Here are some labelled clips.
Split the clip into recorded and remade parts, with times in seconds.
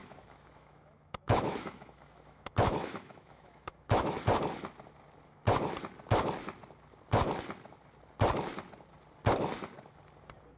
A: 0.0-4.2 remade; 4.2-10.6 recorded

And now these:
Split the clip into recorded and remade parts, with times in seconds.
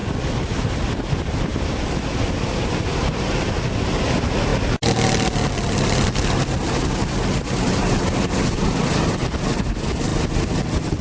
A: 0.0-11.0 recorded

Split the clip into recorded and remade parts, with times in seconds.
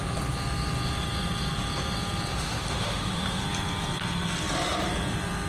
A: 0.0-2.3 recorded; 2.3-3.4 remade; 3.4-5.5 recorded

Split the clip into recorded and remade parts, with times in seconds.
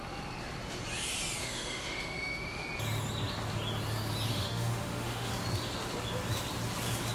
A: 0.0-1.4 recorded; 1.4-2.6 remade; 2.6-4.3 recorded; 4.3-5.3 remade; 5.3-7.1 recorded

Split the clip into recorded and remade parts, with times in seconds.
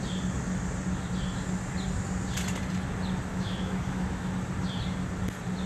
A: 0.0-3.3 recorded; 3.3-4.3 remade; 4.3-5.7 recorded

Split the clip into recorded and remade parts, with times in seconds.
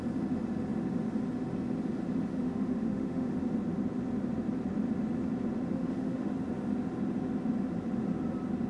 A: 0.0-2.3 recorded; 2.3-3.3 remade; 3.3-5.7 recorded; 5.7-6.3 remade; 6.3-8.7 recorded